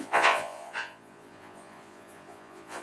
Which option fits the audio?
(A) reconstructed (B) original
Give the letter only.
A